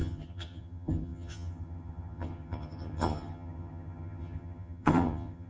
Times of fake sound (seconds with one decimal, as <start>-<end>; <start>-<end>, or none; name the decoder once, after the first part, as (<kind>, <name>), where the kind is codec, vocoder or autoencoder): 0.0-5.5 (vocoder, HiFi-GAN)